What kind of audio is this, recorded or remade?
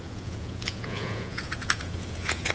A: remade